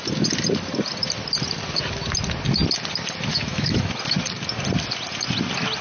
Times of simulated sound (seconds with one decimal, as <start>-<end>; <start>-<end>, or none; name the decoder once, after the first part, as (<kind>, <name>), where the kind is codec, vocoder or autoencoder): 3.3-3.9 (autoencoder, DAC-VAE)